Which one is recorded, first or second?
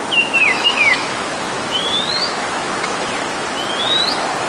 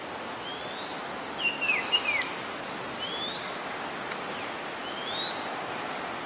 second